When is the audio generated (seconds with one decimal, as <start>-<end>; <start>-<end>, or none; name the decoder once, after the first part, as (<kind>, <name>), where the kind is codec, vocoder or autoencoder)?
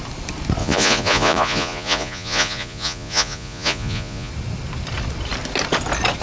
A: 0.6-4.3 (vocoder, Vocos)